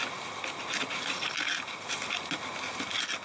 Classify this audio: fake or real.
real